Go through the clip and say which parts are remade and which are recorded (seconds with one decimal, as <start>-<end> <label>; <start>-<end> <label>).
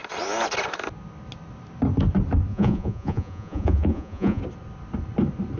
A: 0.0-2.5 recorded; 2.5-4.4 remade; 4.4-5.6 recorded